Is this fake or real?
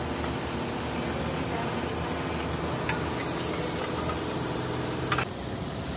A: real